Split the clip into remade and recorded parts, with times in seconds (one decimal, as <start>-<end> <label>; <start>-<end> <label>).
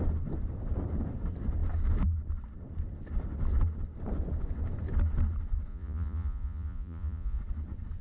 0.0-5.7 recorded; 5.7-7.4 remade; 7.4-8.0 recorded